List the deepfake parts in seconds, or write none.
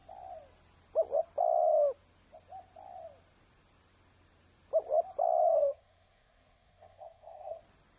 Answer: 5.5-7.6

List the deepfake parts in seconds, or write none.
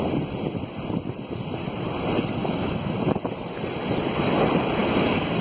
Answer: 2.4-3.0; 4.8-5.4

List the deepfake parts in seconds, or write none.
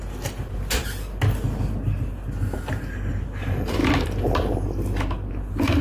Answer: none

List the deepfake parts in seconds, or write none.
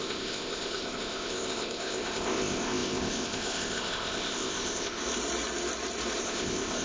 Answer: 0.0-5.0; 6.2-6.8